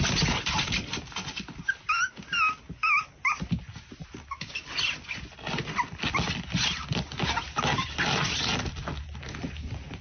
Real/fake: real